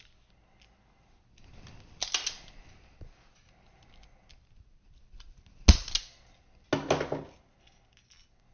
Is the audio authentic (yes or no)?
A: yes